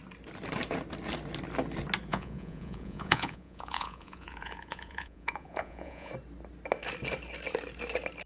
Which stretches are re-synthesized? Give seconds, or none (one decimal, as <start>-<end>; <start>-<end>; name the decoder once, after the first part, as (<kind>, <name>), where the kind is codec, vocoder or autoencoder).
2.1-6.1 (vocoder, Vocos)